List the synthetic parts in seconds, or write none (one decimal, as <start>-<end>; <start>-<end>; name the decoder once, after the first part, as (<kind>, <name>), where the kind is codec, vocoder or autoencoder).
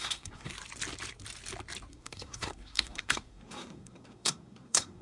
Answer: 0.0-0.5 (codec, SNAC); 1.9-5.0